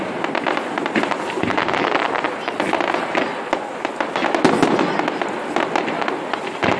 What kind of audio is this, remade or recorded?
recorded